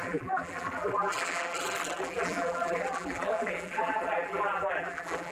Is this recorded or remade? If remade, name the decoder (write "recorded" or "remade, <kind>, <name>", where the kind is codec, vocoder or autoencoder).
remade, vocoder, BigVGAN v2